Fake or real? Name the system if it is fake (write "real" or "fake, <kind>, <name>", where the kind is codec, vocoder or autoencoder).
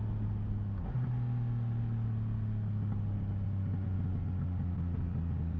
real